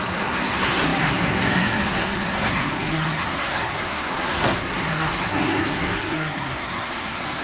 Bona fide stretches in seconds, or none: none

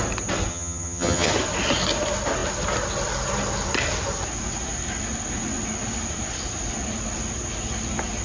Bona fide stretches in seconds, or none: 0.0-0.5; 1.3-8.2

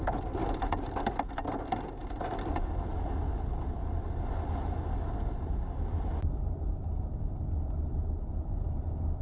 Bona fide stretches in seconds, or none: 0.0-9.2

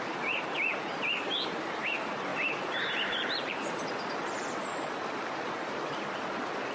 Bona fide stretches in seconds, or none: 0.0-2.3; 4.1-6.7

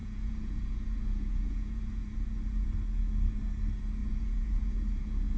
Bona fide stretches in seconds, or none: 2.7-4.0